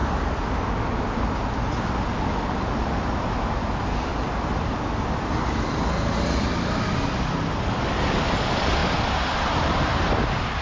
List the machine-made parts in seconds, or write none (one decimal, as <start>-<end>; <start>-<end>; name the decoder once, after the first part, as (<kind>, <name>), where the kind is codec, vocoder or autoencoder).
none